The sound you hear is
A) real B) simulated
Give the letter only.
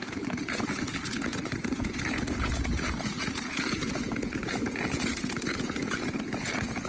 B